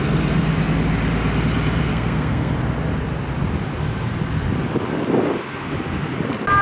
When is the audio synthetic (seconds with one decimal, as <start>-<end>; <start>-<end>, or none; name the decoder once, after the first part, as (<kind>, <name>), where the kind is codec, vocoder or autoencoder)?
1.9-2.5 (codec, SNAC)